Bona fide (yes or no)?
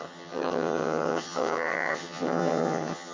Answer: no